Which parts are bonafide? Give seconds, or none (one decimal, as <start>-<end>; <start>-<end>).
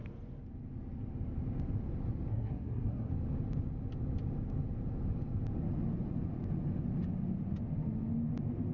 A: 0.0-2.3; 3.1-8.7